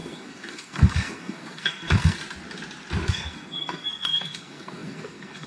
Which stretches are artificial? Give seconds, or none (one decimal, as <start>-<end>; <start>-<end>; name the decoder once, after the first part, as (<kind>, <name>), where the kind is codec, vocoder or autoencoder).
0.0-2.2 (codec, SNAC); 3.1-5.5